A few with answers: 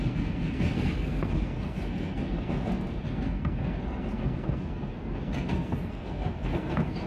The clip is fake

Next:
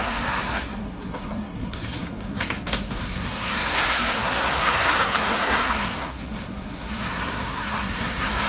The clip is fake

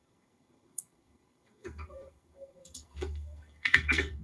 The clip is fake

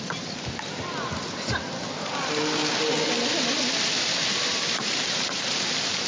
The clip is real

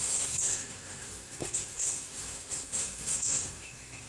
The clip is fake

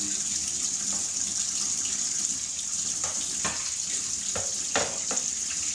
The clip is real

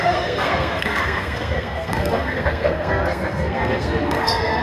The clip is fake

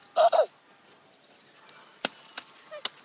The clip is real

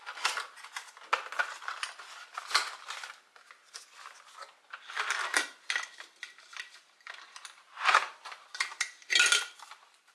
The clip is real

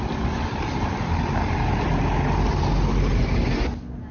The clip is real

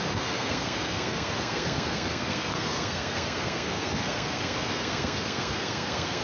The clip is fake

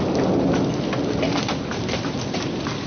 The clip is real